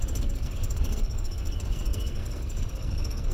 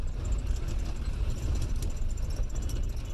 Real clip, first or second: second